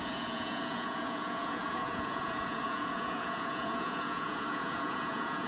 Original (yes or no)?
no